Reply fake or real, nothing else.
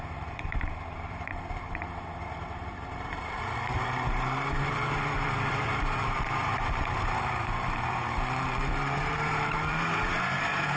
fake